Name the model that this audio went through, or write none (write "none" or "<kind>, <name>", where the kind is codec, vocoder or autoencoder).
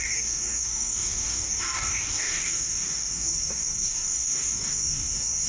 codec, DAC